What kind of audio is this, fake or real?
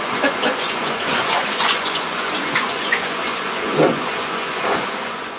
fake